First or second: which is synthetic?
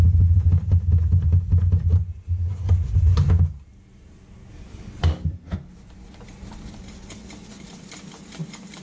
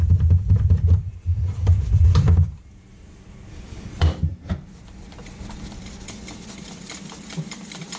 second